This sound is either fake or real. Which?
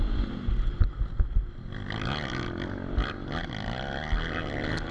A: real